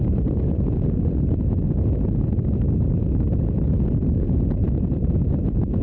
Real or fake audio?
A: real